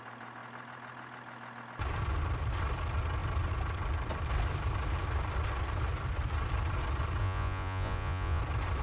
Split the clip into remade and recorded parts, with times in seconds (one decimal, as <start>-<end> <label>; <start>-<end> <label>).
0.0-7.2 recorded; 7.2-8.4 remade; 8.4-8.8 recorded